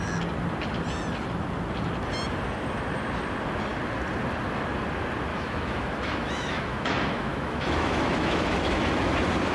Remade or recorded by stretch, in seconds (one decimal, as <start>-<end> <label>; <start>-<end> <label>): 0.0-5.3 recorded; 5.3-9.1 remade; 9.1-9.5 recorded